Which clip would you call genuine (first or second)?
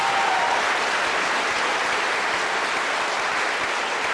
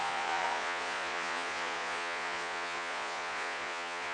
first